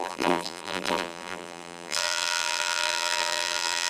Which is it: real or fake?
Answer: fake